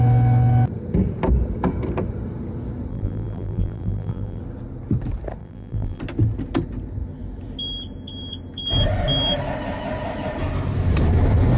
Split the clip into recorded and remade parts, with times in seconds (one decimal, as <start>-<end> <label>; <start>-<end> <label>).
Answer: 0.0-2.9 recorded; 2.9-4.4 remade; 4.4-5.4 recorded; 5.4-6.0 remade; 6.0-11.6 recorded